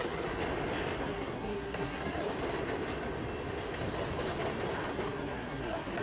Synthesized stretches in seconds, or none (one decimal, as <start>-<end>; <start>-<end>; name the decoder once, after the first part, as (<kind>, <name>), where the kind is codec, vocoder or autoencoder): 0.0-0.4 (codec, SNAC); 1.0-2.3; 4.9-6.0